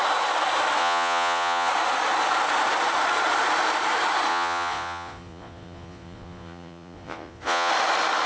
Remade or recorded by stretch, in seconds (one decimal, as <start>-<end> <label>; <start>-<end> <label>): 0.0-0.8 recorded; 0.8-1.7 remade; 1.7-4.3 recorded; 4.3-7.7 remade; 7.7-8.3 recorded